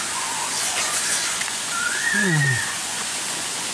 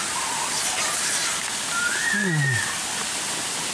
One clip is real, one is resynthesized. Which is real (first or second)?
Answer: second